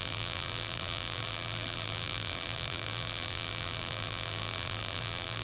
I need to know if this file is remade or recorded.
remade